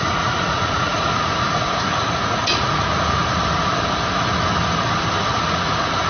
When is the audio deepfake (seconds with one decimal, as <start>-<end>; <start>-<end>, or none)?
0.0-3.2; 5.3-6.1